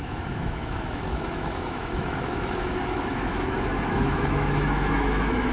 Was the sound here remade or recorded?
remade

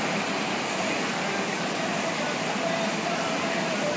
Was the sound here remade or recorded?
remade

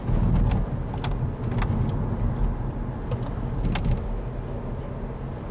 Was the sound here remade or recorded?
recorded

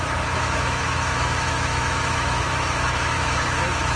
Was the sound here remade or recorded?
remade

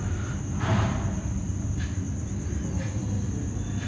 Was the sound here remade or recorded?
recorded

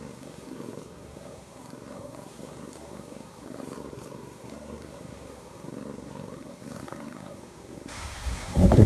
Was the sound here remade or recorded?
remade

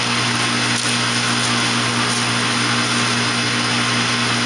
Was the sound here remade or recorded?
recorded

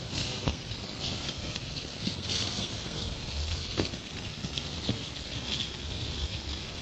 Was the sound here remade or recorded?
remade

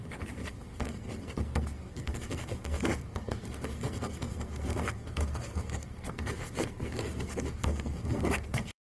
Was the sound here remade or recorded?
remade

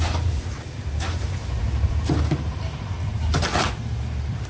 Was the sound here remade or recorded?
remade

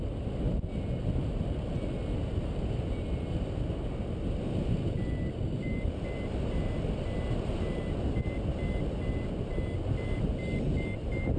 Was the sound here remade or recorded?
recorded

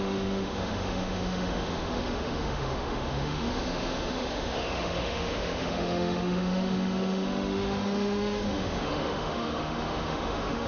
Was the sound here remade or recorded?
remade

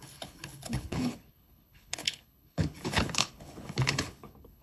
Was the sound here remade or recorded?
remade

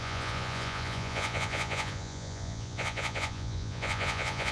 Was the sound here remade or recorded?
remade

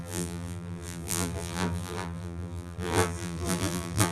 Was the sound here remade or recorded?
remade